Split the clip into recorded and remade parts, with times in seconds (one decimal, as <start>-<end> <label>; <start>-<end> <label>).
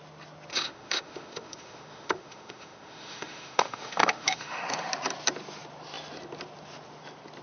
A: 0.0-0.5 recorded; 0.5-4.9 remade; 4.9-7.4 recorded